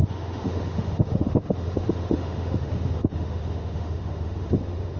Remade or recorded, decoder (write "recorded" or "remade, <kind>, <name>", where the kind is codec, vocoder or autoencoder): remade, autoencoder, DAC-VAE